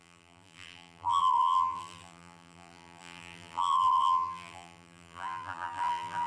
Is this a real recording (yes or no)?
no